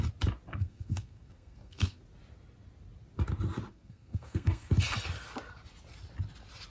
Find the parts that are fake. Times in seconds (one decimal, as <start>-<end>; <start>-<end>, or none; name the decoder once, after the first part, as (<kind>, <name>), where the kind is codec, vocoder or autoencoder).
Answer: 0.5-2.0 (codec, SNAC); 3.7-4.7